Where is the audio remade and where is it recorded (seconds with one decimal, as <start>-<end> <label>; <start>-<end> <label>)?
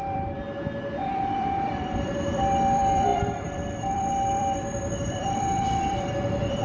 0.0-0.4 remade; 0.4-1.0 recorded; 1.0-6.6 remade